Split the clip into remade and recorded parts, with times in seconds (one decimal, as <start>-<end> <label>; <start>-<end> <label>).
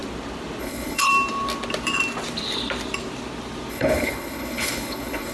0.0-0.6 recorded; 0.6-1.1 remade; 1.1-3.7 recorded; 3.7-5.3 remade